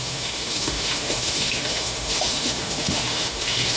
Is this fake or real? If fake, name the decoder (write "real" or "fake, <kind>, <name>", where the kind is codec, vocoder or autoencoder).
fake, autoencoder, DAC-VAE